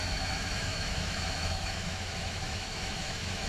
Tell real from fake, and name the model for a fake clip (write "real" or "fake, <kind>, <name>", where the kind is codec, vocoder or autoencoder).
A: fake, autoencoder, DAC-VAE